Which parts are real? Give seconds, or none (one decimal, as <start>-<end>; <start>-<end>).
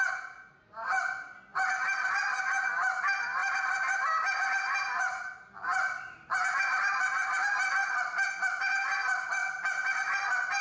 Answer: 0.0-10.6